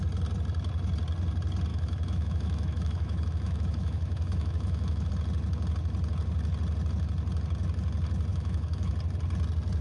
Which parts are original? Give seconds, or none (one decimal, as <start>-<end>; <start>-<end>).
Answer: 0.0-1.7; 5.1-8.3; 8.9-9.8